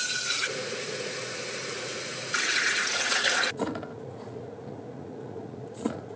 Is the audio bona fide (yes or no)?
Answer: no